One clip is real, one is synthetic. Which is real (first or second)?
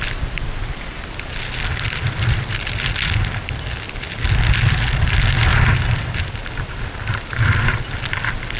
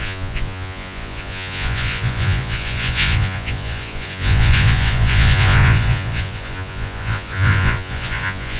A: first